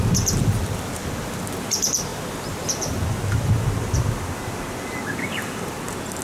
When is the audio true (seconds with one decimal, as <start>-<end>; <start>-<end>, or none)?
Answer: 0.0-0.4; 1.4-2.1; 5.8-6.2